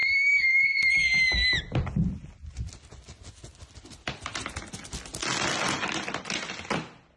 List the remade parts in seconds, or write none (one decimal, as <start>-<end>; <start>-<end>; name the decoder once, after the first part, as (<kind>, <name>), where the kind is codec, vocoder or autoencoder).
0.0-0.9 (codec, SNAC)